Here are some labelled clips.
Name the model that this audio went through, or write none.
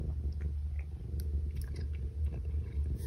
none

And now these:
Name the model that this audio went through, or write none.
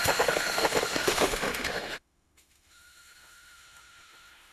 autoencoder, DAC-VAE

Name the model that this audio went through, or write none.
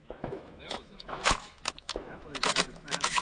autoencoder, DAC-VAE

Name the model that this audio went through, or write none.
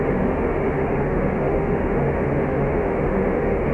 autoencoder, DAC-VAE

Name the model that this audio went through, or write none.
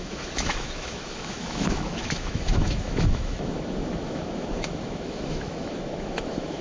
autoencoder, DAC-VAE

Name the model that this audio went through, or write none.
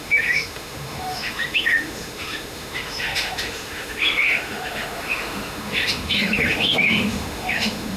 autoencoder, DAC-VAE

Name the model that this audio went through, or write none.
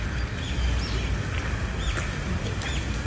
none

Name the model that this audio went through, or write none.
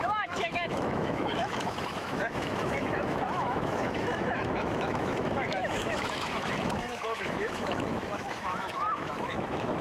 autoencoder, DAC-VAE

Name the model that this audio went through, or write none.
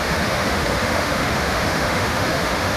autoencoder, DAC-VAE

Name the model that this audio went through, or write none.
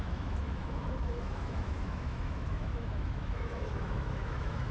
autoencoder, DAC-VAE